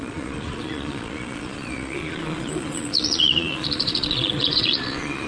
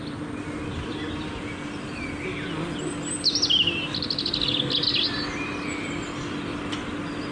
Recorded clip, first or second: second